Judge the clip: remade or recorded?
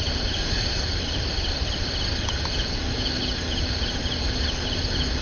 recorded